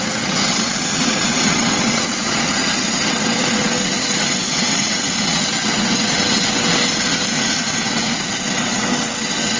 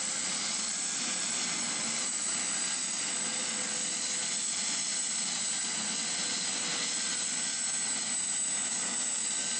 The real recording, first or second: second